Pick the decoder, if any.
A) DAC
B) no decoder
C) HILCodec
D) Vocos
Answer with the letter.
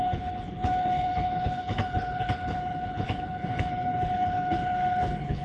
C